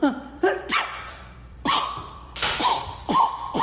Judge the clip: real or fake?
fake